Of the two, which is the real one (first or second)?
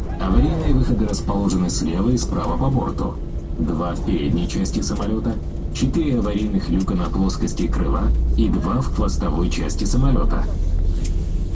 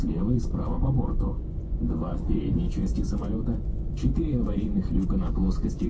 first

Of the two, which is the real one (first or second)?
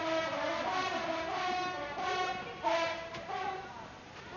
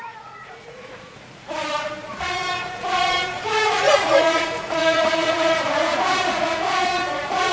first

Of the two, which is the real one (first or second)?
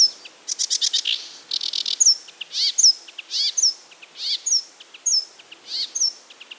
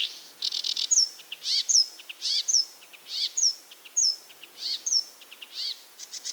first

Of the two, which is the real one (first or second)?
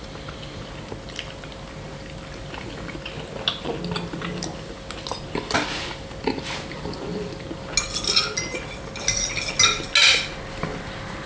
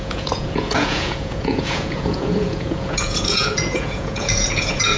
first